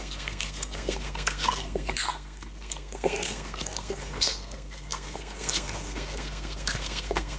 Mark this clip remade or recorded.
remade